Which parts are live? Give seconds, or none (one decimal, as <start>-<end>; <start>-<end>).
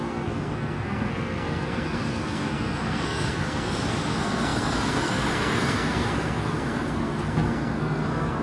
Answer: none